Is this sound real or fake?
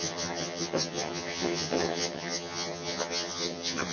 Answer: fake